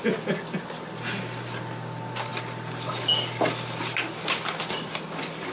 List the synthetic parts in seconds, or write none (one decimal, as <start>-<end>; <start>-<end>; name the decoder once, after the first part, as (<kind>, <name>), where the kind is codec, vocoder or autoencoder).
none